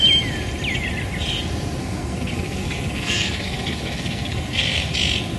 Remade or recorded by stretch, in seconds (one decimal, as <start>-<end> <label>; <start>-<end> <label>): 0.0-1.8 recorded; 1.8-4.9 remade; 4.9-5.4 recorded